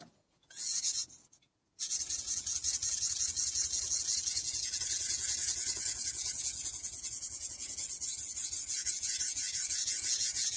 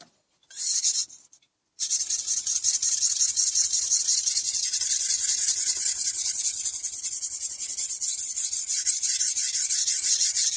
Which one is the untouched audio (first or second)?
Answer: second